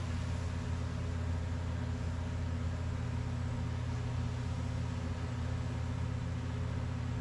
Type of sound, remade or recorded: recorded